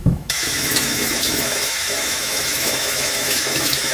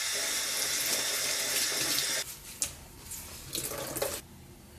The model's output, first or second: first